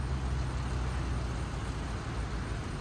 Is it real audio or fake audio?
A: real